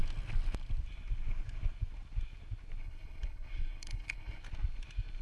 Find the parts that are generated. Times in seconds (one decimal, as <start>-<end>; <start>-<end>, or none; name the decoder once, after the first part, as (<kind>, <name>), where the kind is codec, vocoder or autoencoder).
2.8-4.4 (codec, HILCodec)